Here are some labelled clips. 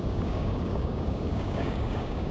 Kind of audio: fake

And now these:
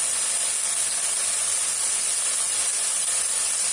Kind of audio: real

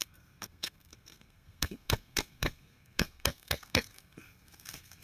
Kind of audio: fake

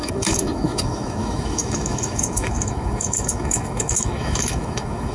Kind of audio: fake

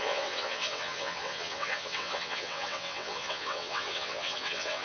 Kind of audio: fake